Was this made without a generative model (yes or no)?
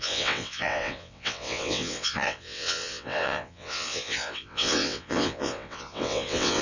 no